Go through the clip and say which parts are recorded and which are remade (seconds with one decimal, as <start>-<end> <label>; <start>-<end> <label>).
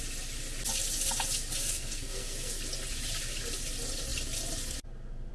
0.0-1.6 recorded; 1.6-2.6 remade; 2.6-5.3 recorded